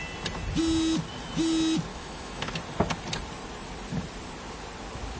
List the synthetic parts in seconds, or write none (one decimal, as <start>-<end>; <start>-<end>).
1.9-2.5